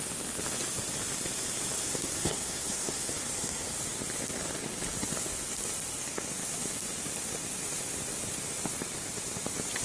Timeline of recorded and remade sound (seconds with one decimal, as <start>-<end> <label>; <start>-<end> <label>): 0.0-1.8 recorded; 1.8-3.7 remade; 3.7-9.8 recorded